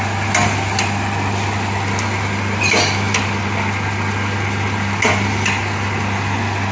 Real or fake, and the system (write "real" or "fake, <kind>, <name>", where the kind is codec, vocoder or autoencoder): real